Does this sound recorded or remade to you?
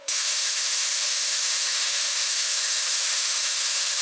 remade